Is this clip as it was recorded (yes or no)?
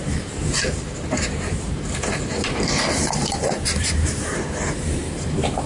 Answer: no